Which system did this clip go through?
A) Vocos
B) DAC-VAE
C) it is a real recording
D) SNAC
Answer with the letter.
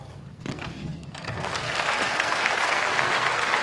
D